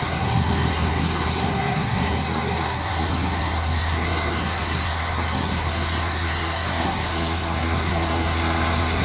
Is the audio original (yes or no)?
no